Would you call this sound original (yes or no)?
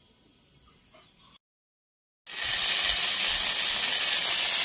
yes